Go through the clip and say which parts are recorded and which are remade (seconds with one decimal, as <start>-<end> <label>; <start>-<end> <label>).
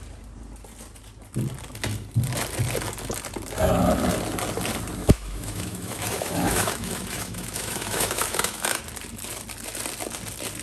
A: 0.0-5.0 recorded; 5.0-8.8 remade; 8.8-10.6 recorded